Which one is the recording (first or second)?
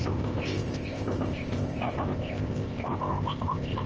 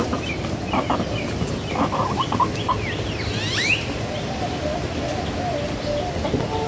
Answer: second